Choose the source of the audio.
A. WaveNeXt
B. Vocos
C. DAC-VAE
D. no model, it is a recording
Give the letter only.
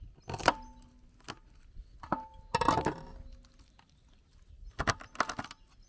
D